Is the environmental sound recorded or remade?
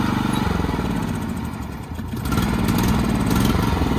recorded